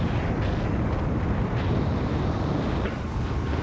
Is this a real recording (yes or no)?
yes